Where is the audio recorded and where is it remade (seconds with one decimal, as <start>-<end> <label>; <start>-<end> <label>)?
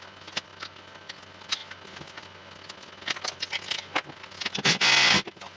0.0-5.6 recorded